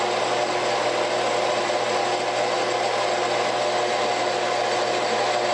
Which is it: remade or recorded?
recorded